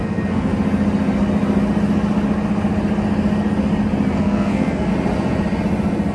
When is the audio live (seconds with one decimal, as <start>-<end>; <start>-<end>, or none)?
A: 0.5-4.2; 4.9-6.1